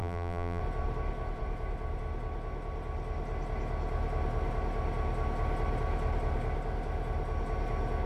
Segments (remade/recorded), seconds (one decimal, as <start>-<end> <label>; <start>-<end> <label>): 0.0-0.6 remade; 0.6-8.1 recorded